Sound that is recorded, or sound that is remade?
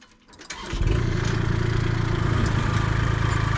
recorded